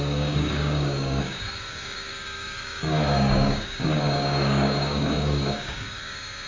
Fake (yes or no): yes